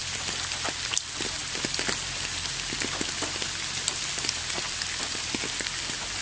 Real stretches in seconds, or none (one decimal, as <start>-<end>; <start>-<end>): 0.0-6.2